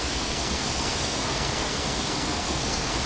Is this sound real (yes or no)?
no